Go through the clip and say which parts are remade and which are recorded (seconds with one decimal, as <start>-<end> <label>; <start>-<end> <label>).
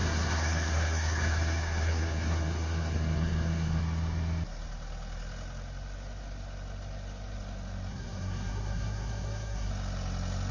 0.0-3.8 remade; 3.8-7.9 recorded; 7.9-9.7 remade; 9.7-10.5 recorded